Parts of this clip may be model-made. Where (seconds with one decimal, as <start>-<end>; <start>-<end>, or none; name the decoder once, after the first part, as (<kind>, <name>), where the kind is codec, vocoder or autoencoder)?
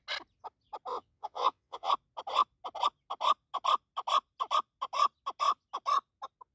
0.9-1.9 (vocoder, WaveNeXt)